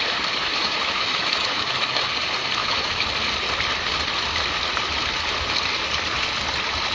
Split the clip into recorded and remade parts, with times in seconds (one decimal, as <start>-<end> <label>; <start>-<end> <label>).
0.0-0.4 recorded; 0.4-2.1 remade; 2.1-2.6 recorded; 2.6-3.1 remade; 3.1-6.9 recorded

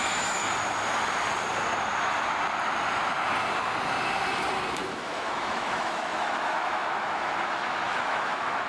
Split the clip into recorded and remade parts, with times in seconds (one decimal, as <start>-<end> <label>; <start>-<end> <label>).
0.0-0.4 remade; 0.4-4.8 recorded; 4.8-8.7 remade

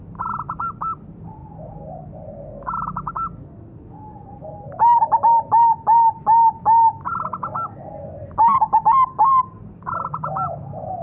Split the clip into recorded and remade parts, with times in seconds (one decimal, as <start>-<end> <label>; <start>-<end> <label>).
0.0-11.0 recorded

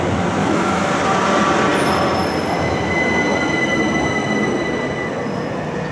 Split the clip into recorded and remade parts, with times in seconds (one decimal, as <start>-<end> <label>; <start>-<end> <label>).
0.0-0.4 recorded; 0.4-0.9 remade; 0.9-5.9 recorded